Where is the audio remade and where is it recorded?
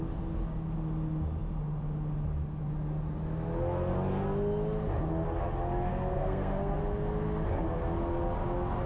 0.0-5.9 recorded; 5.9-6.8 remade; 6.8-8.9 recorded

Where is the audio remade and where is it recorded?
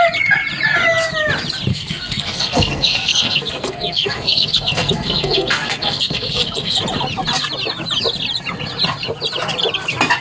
0.0-1.7 recorded; 1.7-6.8 remade; 6.8-10.2 recorded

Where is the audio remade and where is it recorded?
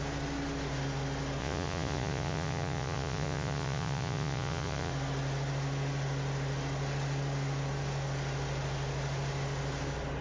0.0-1.4 recorded; 1.4-4.9 remade; 4.9-10.2 recorded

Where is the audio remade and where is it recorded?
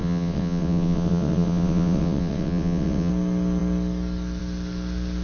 0.0-3.1 remade; 3.1-5.2 recorded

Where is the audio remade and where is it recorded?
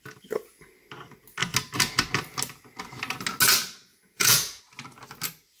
0.0-3.9 recorded; 3.9-4.6 remade; 4.6-5.6 recorded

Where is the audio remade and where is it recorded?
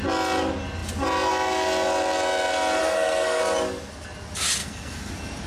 0.0-2.8 recorded; 2.8-3.4 remade; 3.4-4.6 recorded; 4.6-5.1 remade; 5.1-5.5 recorded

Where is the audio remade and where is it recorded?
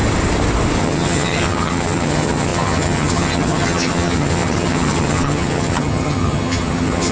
0.0-0.8 recorded; 0.8-7.1 remade